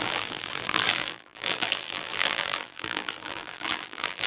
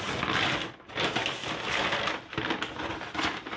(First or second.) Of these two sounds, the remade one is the first